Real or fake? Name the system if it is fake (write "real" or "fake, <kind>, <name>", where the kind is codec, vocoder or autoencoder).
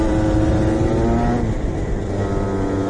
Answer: real